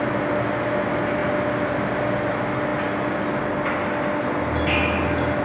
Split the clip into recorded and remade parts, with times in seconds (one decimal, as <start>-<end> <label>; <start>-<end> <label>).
0.0-5.4 recorded

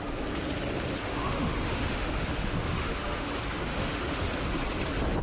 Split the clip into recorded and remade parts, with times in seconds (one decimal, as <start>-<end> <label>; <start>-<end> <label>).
0.0-1.0 recorded; 1.0-3.3 remade; 3.3-3.7 recorded; 3.7-4.3 remade; 4.3-5.2 recorded

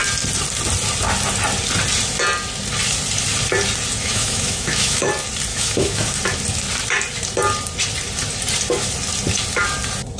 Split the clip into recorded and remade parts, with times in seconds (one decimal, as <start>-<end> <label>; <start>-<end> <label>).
0.0-4.0 recorded; 4.0-5.1 remade; 5.1-5.5 recorded; 5.5-6.2 remade; 6.2-10.2 recorded